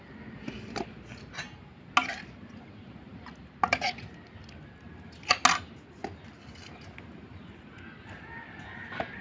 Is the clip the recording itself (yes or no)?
yes